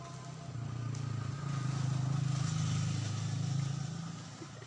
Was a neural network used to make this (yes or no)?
no